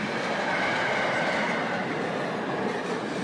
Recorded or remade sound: recorded